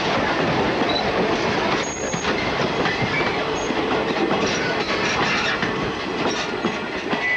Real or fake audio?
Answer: real